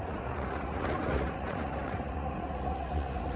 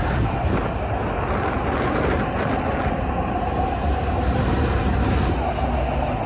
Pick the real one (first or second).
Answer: second